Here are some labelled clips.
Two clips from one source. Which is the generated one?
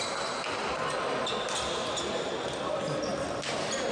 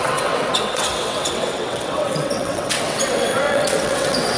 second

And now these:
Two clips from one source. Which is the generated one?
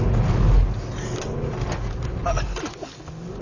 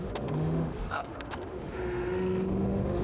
second